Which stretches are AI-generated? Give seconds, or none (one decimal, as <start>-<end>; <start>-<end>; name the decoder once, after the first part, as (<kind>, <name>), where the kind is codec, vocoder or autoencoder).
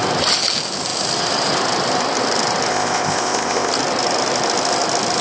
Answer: 2.7-3.7 (codec, ZipCodec)